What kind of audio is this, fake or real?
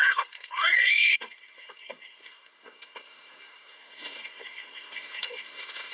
fake